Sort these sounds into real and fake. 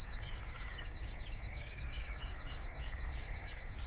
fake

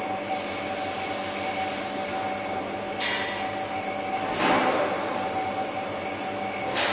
real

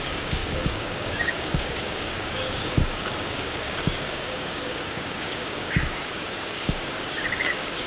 fake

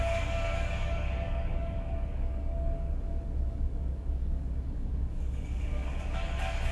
fake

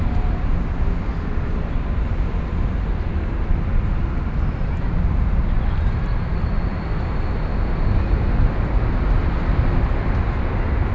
real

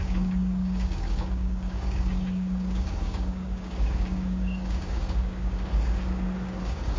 fake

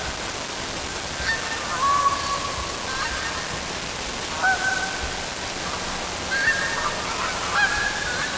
real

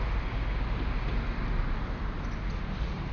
real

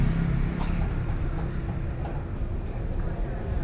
real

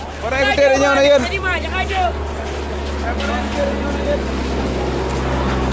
real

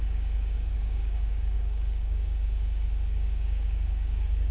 fake